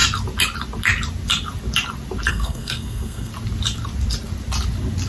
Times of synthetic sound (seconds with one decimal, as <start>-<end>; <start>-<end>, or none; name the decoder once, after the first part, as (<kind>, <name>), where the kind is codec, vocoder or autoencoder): 2.3-3.3 (codec, SNAC)